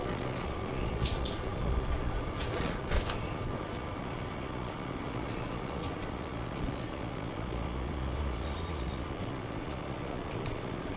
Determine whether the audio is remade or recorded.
remade